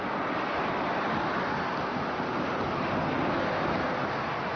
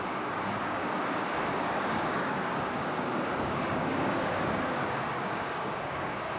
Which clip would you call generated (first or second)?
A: second